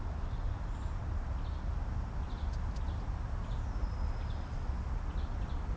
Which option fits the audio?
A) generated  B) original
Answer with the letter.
B